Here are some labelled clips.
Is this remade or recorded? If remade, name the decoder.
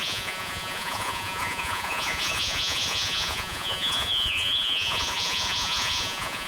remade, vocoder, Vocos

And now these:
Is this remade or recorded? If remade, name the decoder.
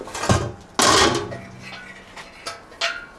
recorded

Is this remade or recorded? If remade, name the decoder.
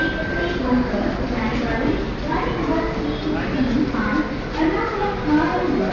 recorded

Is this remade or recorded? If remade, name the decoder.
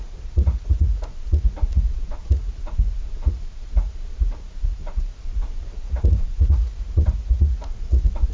remade, vocoder, Vocos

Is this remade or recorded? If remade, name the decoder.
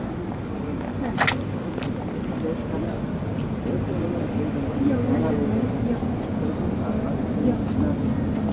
recorded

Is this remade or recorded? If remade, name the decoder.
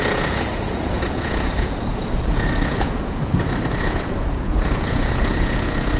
remade, vocoder, Vocos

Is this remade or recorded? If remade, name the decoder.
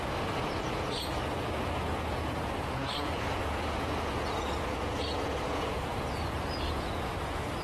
remade, vocoder, Vocos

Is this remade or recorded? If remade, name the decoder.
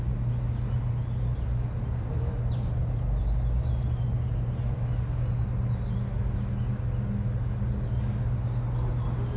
recorded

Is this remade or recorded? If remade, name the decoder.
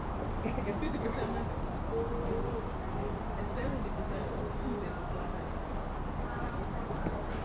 recorded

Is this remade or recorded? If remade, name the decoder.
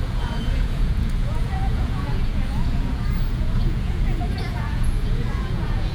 remade, vocoder, Vocos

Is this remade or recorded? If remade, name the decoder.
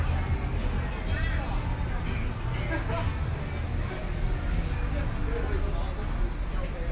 recorded